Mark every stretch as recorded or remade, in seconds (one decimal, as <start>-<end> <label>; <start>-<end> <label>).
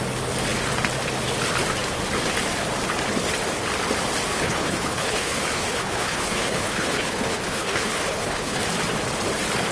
0.0-4.3 recorded; 4.3-8.6 remade; 8.6-9.7 recorded